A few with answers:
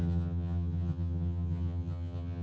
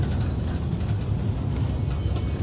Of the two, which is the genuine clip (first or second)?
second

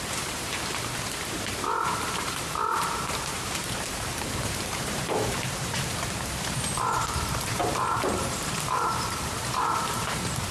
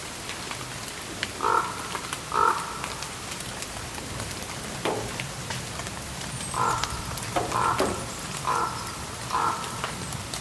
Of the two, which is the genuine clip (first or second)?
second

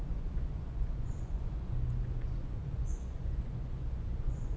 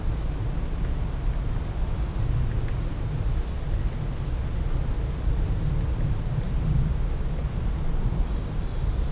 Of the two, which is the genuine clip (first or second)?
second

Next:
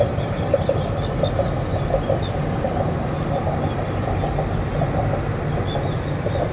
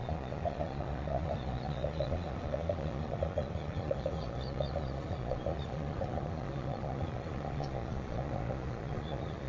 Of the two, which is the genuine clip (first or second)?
first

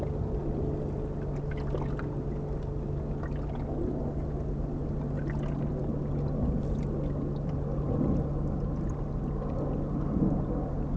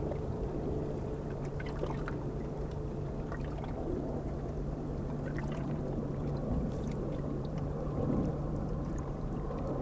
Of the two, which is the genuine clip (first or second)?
first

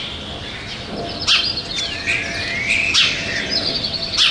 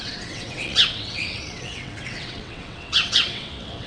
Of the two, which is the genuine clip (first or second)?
first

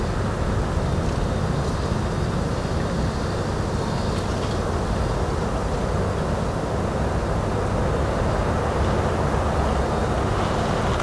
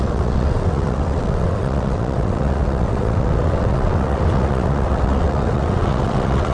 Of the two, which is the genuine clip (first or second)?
first